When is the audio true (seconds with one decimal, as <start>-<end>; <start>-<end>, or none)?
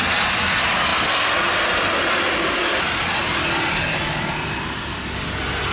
0.0-5.7